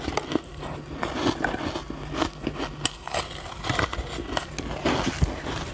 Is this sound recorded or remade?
recorded